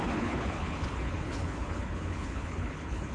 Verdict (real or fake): fake